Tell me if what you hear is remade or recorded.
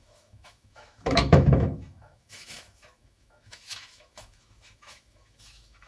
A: remade